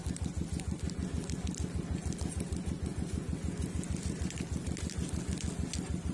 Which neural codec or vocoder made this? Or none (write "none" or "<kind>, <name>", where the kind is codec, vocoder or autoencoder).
none